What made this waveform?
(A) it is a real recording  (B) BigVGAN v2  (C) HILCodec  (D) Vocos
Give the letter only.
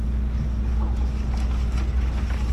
A